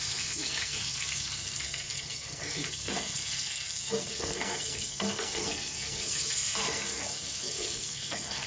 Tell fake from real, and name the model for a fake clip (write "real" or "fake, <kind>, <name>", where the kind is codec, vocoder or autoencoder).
fake, codec, SNAC